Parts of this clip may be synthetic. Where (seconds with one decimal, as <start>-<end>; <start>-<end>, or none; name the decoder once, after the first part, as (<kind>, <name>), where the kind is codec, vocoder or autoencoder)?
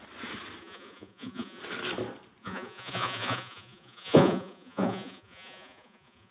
0.6-1.6 (vocoder, Vocos); 2.4-6.3